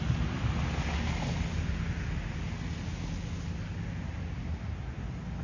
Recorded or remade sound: recorded